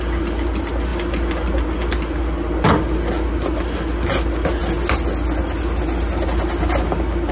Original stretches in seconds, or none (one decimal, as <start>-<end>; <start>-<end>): 0.0-7.3